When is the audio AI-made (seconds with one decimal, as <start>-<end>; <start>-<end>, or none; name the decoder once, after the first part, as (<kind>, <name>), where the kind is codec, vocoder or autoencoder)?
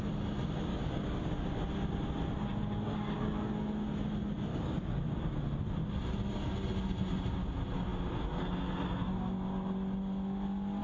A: 0.7-1.3 (codec, DAC); 4.5-5.4